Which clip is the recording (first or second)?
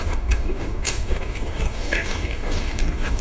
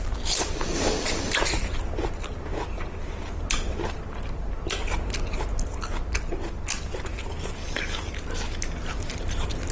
second